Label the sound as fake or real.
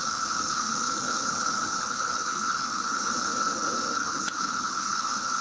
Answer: fake